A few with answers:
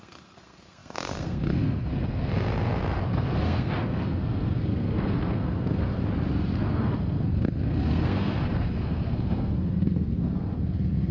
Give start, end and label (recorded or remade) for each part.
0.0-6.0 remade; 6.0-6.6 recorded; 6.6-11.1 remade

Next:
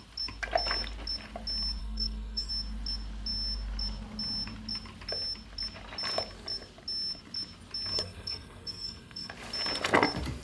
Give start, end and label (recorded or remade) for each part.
0.0-1.8 recorded; 1.8-2.5 remade; 2.5-7.9 recorded; 7.9-9.3 remade; 9.3-10.4 recorded

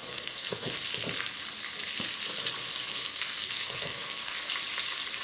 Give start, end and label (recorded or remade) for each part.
0.0-0.7 remade; 0.7-2.9 recorded; 2.9-4.5 remade; 4.5-5.2 recorded

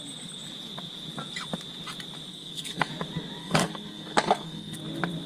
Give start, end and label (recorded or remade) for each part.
0.0-2.3 recorded; 2.3-2.9 remade; 2.9-3.4 recorded; 3.4-4.8 remade; 4.8-5.3 recorded

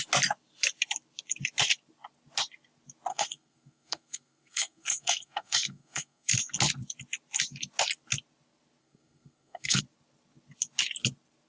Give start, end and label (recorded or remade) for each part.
0.0-3.1 recorded; 3.1-6.3 remade; 6.3-8.8 recorded; 8.8-9.8 remade; 9.8-11.5 recorded

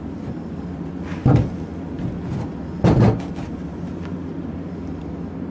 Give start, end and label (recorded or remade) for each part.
0.0-5.5 recorded

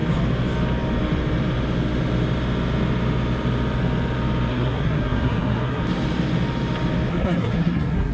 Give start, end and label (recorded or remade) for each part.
0.0-4.5 recorded; 4.5-5.8 remade; 5.8-7.1 recorded; 7.1-8.1 remade